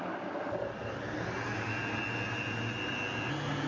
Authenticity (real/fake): real